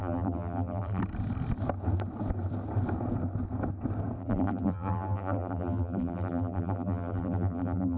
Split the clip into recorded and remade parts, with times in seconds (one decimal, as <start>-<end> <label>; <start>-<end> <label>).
0.0-1.0 remade; 1.0-4.2 recorded; 4.2-8.0 remade